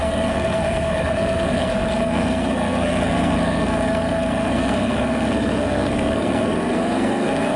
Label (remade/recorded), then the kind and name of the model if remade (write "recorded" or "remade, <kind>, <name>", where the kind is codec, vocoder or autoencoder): remade, codec, SNAC